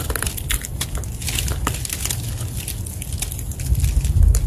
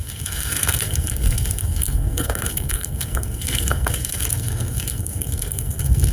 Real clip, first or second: first